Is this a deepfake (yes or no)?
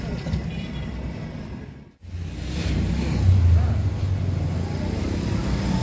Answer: no